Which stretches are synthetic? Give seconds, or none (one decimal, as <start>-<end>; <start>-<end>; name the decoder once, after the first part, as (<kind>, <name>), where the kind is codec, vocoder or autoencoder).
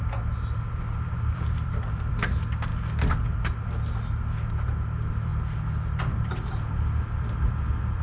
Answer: 0.0-2.7 (vocoder, BigVGAN v2); 4.5-5.3; 6.0-8.0